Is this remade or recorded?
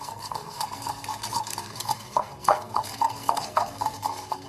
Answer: remade